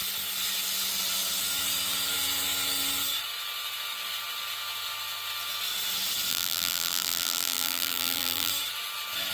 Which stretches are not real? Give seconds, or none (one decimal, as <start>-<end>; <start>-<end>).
6.3-8.5